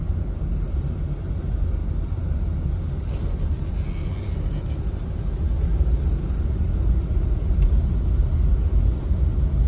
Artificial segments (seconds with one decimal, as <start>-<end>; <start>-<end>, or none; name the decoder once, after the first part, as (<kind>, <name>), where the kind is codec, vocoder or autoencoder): none